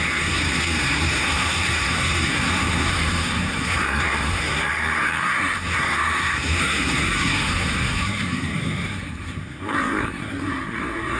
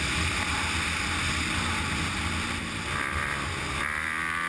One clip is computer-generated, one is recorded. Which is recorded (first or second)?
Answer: second